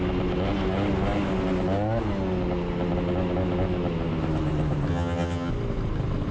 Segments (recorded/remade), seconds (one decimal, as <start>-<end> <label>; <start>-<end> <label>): 0.0-4.9 recorded; 4.9-5.5 remade; 5.5-6.3 recorded